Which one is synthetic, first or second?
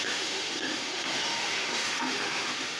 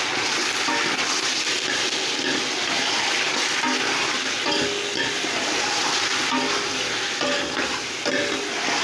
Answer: first